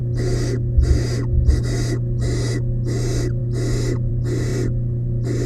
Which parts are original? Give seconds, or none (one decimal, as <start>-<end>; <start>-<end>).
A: 0.0-5.5